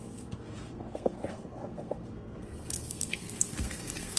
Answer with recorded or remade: remade